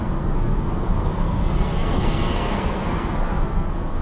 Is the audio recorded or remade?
remade